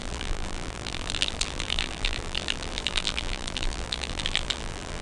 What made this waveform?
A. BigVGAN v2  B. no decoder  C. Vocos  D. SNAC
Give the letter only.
A